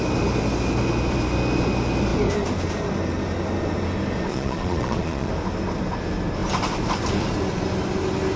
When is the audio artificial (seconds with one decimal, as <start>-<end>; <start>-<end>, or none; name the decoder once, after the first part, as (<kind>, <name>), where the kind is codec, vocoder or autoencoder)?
4.3-5.3 (vocoder, Vocos)